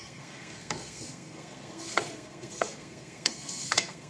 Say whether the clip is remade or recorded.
remade